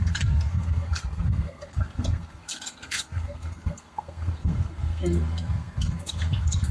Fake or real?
fake